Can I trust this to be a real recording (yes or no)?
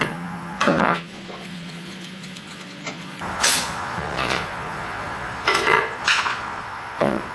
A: no